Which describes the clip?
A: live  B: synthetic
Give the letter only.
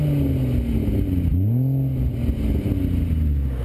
A